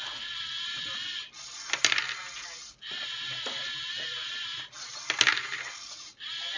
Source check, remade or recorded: recorded